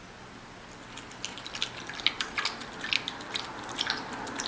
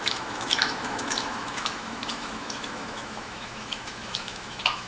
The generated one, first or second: second